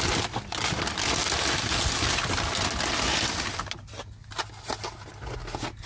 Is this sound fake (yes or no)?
no